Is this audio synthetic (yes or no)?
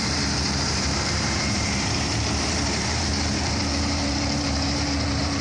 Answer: yes